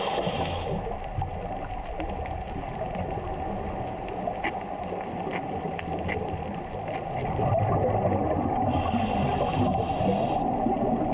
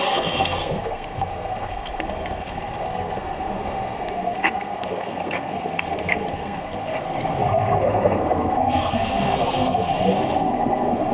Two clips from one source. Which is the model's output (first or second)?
second